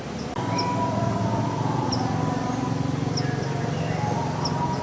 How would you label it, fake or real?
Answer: real